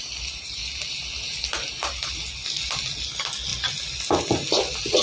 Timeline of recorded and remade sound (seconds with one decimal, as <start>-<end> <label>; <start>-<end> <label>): 0.0-5.0 recorded